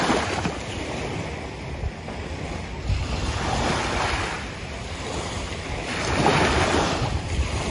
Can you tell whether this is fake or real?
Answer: real